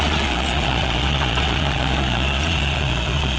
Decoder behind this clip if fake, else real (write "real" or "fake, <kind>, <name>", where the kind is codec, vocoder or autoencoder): fake, vocoder, Vocos